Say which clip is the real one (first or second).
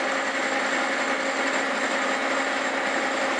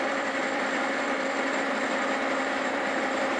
first